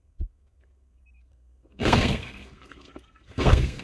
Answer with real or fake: fake